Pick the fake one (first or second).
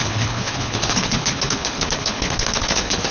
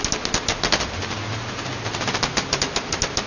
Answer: first